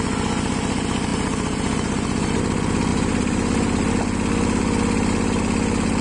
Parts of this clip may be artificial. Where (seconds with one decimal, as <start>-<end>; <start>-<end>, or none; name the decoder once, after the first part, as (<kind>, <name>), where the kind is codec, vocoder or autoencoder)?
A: 1.1-2.4 (vocoder, BigVGAN v2); 2.9-3.9